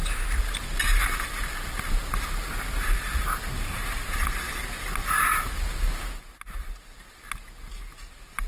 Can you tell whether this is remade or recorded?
recorded